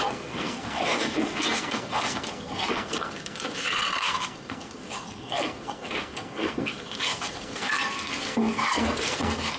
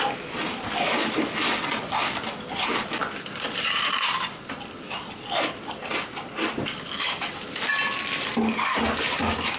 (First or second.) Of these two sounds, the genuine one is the second